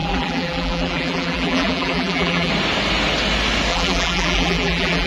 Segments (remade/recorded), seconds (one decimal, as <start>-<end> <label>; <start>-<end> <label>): 0.0-2.5 remade; 2.5-3.7 recorded; 3.7-5.1 remade